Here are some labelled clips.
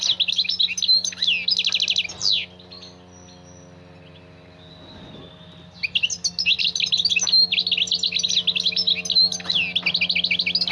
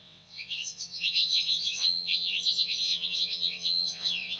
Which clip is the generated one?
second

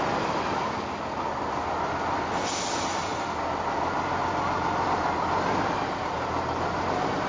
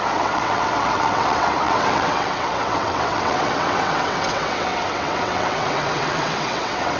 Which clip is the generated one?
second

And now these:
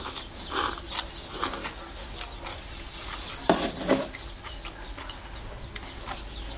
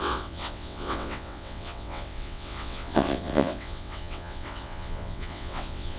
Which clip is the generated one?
second